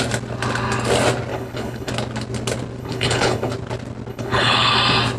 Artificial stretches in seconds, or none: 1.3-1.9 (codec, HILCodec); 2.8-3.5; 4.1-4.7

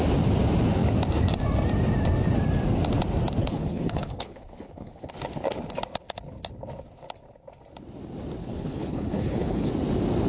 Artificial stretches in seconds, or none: 3.4-5.1 (codec, HILCodec); 8.4-9.7

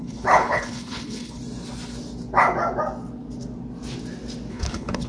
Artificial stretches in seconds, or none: 0.0-1.4 (codec, HILCodec); 4.5-5.1